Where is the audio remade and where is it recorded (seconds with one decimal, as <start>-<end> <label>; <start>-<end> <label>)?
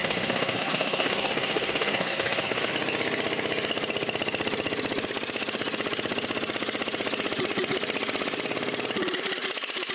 0.0-2.7 remade; 2.7-9.9 recorded